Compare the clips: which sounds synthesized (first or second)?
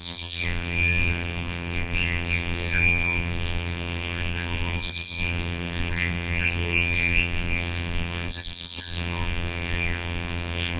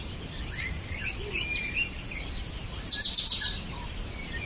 first